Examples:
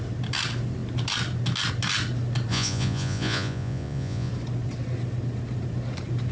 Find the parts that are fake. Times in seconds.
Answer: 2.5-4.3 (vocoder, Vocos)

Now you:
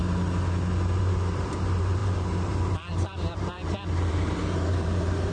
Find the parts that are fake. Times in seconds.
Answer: 1.0-5.3 (vocoder, BigVGAN v2)

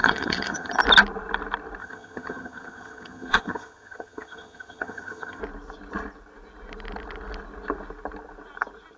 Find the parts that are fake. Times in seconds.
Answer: 0.0-0.8 (vocoder, HiFi-GAN); 1.8-5.4

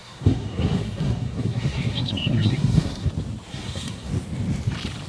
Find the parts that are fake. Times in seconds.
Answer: 0.0-3.1 (codec, SNAC); 3.5-4.1

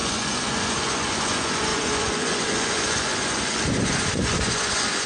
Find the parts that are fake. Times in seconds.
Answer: 0.0-5.1 (vocoder, Vocos)

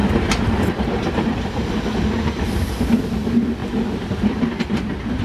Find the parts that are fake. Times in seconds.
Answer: 0.0-2.7 (vocoder, BigVGAN v2); 3.6-4.6

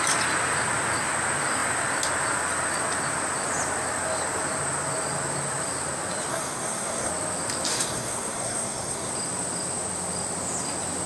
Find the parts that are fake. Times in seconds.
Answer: 6.3-7.1 (codec, SNAC); 7.7-9.1